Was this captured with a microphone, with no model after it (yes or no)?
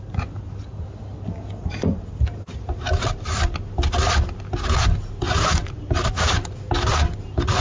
yes